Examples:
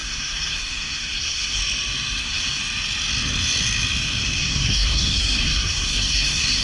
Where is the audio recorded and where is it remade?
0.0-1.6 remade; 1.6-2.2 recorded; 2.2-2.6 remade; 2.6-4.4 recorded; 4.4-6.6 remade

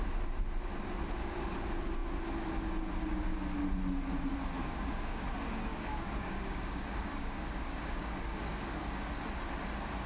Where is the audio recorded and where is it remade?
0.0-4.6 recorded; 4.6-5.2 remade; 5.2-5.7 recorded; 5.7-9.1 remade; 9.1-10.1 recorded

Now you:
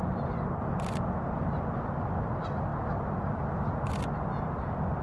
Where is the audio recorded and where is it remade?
0.0-5.0 recorded